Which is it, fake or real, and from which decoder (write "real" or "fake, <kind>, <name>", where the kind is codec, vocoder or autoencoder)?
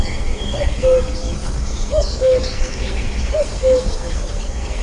fake, codec, SNAC